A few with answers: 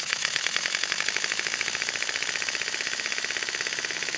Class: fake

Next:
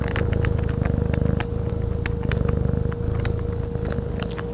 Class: real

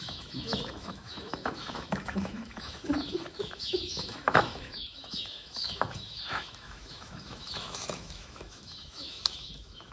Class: fake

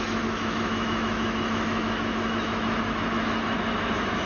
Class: fake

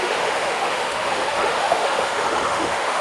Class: fake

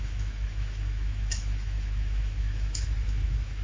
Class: fake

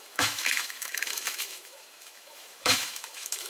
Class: fake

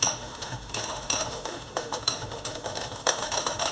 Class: fake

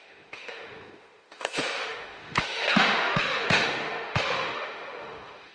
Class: fake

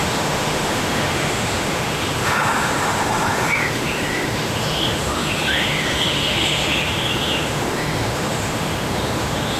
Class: fake